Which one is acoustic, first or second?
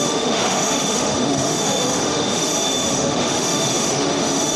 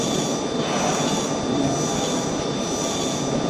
second